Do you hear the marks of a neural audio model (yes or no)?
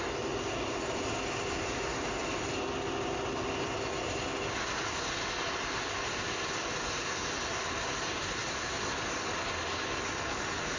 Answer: no